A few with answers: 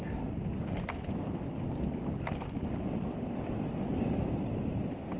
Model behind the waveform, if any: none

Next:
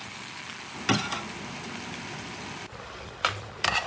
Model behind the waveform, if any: none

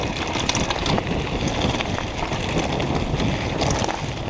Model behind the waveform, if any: none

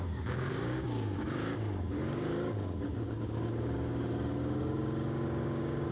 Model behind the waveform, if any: codec, DAC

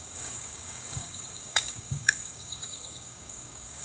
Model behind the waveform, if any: codec, DAC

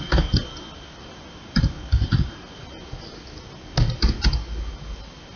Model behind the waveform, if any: none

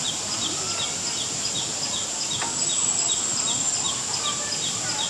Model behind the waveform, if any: none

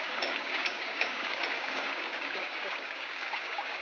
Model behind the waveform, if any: codec, DAC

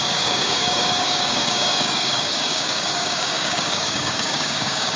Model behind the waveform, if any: codec, DAC